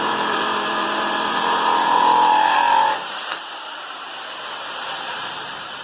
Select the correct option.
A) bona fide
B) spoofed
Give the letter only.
B